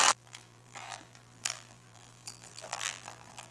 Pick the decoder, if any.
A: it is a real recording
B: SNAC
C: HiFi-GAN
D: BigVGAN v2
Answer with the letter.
D